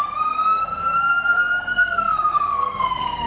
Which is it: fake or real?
fake